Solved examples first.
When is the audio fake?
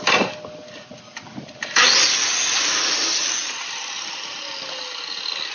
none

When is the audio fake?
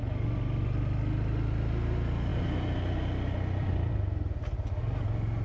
none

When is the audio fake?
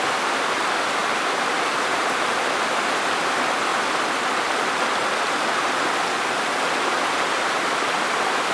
1.0-2.4 (vocoder, BigVGAN v2)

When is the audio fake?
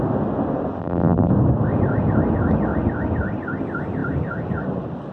0.8-1.3 (vocoder, BigVGAN v2)